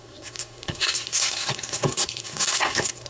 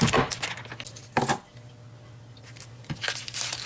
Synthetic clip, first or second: first